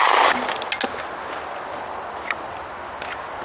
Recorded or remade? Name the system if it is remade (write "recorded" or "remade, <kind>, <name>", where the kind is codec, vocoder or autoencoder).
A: recorded